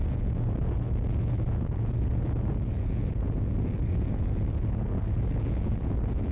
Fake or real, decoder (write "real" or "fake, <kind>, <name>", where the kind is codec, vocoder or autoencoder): fake, vocoder, Vocos